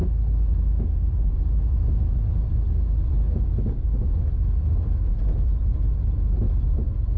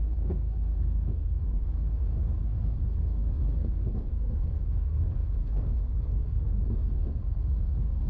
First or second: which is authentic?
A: first